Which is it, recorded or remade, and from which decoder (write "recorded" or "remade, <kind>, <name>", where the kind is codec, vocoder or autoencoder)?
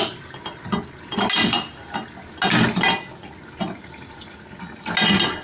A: recorded